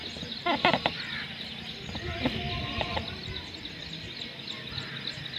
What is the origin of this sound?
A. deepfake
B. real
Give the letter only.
B